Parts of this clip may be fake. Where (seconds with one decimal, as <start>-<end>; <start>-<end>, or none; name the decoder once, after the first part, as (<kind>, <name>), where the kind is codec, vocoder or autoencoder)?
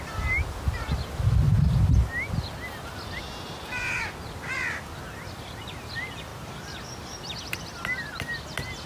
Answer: none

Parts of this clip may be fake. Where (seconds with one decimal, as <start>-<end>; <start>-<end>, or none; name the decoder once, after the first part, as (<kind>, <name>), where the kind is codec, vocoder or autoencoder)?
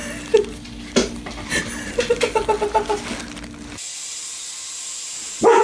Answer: none